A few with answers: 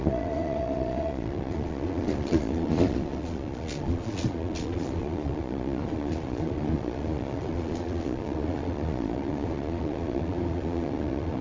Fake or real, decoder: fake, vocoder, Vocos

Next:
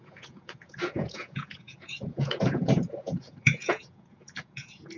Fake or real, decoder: fake, vocoder, Vocos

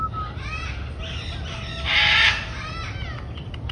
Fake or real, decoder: real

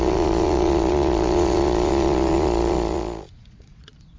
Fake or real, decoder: fake, vocoder, Vocos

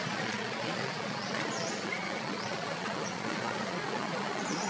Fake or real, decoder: fake, vocoder, Vocos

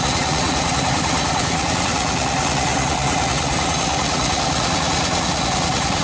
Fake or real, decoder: fake, vocoder, Vocos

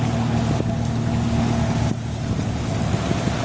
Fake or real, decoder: real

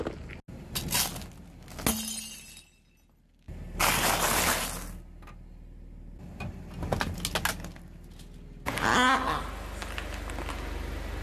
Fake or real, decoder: real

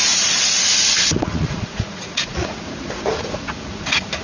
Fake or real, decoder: fake, vocoder, Vocos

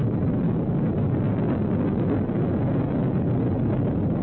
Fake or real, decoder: real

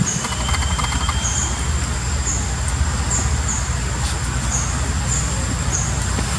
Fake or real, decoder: real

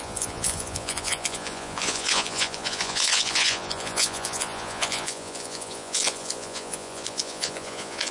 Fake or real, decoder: fake, vocoder, Vocos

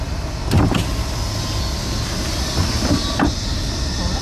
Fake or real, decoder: real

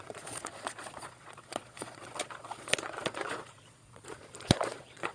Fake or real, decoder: fake, vocoder, Vocos